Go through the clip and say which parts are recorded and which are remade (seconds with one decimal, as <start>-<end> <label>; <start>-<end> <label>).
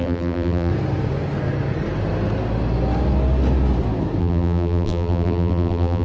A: 0.0-0.7 remade; 0.7-4.2 recorded; 4.2-6.0 remade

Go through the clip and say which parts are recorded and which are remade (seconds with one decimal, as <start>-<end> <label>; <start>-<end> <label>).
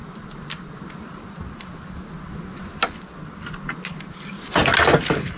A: 0.0-5.4 recorded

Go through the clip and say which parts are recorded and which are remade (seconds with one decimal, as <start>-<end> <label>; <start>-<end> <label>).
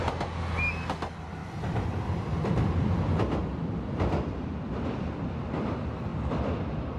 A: 0.0-1.4 recorded; 1.4-4.4 remade; 4.4-7.0 recorded